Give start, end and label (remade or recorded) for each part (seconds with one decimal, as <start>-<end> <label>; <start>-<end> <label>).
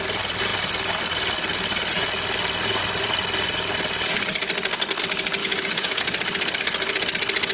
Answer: 0.0-5.4 recorded; 5.4-6.0 remade; 6.0-7.5 recorded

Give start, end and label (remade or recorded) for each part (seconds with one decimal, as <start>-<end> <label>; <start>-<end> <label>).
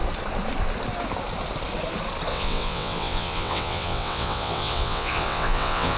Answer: 0.0-2.3 recorded; 2.3-6.0 remade